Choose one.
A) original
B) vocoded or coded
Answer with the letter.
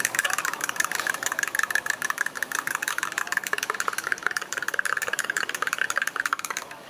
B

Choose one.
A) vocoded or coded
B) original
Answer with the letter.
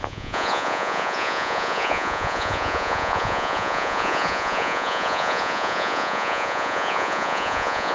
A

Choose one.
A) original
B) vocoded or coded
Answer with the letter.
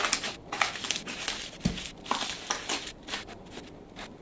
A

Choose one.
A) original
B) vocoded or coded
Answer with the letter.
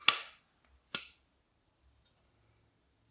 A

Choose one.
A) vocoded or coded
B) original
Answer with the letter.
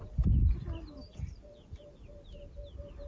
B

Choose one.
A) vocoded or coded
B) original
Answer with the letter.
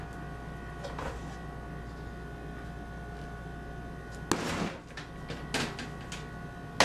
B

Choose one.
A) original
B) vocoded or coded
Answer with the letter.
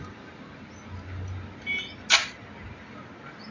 A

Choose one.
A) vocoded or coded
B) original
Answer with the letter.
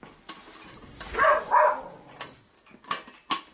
B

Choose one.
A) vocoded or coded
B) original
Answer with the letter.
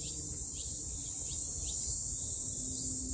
B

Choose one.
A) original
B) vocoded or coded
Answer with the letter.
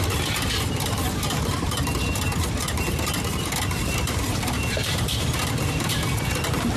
B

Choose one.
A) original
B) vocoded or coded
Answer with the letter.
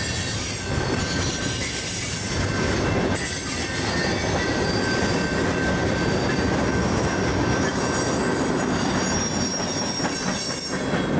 A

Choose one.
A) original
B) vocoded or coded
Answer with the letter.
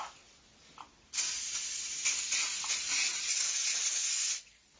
A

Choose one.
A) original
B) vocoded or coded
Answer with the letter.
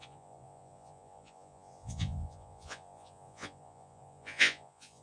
B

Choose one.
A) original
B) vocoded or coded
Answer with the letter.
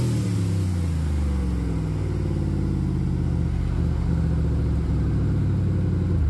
A